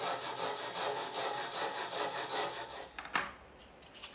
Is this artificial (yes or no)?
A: no